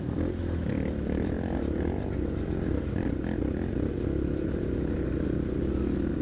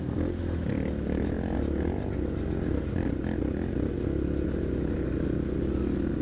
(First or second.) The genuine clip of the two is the second